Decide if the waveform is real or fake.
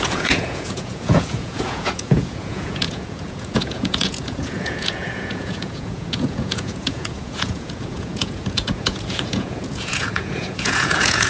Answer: fake